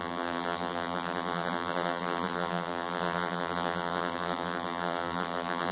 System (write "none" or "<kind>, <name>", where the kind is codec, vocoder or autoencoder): vocoder, BigVGAN v2